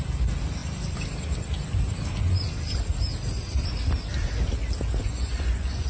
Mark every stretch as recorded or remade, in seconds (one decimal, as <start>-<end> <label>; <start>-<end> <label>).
0.0-5.0 recorded; 5.0-5.9 remade